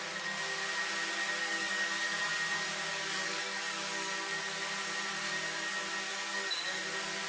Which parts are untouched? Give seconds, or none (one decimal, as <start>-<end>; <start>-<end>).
0.0-1.4; 2.3-2.9; 4.4-6.1; 6.8-7.3